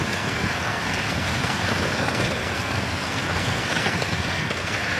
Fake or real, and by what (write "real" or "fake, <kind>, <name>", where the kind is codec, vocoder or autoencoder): fake, codec, SNAC